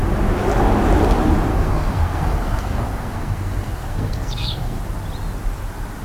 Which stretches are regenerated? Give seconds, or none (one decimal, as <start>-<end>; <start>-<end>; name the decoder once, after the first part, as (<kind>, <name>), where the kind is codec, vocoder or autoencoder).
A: 1.5-4.8 (codec, SNAC)